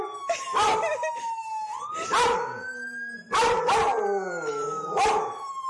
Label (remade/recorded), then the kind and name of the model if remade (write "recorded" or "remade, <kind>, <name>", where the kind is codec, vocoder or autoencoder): recorded